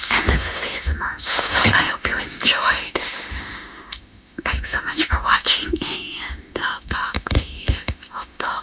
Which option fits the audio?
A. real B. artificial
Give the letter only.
B